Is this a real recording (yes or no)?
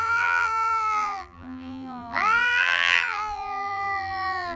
no